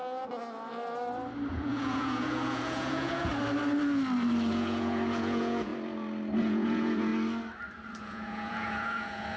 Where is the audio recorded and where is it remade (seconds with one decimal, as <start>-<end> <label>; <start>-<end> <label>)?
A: 0.0-1.5 recorded; 1.5-3.3 remade; 3.3-4.5 recorded; 4.5-5.7 remade; 5.7-6.4 recorded; 6.4-7.1 remade; 7.1-8.0 recorded; 8.0-9.4 remade